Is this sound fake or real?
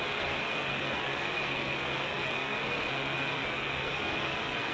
fake